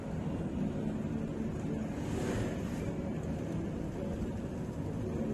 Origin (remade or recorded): recorded